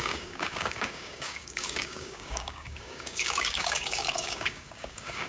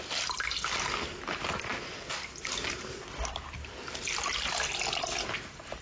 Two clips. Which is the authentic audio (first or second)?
second